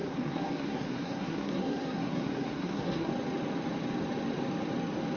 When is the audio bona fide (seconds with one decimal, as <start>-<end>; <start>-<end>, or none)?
3.1-5.2